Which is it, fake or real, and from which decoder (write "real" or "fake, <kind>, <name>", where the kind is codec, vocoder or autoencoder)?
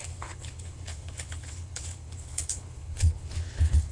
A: fake, codec, HILCodec